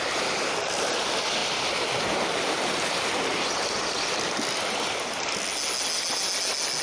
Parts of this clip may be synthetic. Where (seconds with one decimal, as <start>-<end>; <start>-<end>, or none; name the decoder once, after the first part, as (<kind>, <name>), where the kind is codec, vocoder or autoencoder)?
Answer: 1.4-5.2 (vocoder, BigVGAN v2)